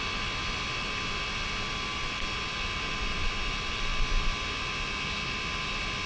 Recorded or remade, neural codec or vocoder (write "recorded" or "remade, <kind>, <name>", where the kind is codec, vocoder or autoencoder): recorded